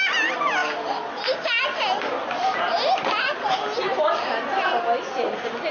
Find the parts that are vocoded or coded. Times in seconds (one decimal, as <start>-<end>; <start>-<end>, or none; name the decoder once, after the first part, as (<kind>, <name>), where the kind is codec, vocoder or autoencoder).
none